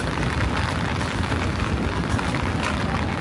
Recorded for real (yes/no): yes